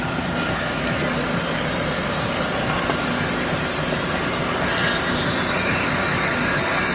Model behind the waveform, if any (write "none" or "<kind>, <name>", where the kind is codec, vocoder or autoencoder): none